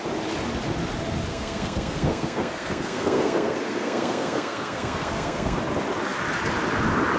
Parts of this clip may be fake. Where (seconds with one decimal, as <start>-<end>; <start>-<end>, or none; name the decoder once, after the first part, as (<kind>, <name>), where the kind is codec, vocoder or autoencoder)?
1.3-5.6 (codec, SNAC)